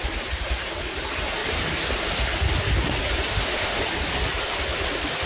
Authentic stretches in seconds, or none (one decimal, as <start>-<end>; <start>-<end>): 0.0-3.3; 3.8-5.3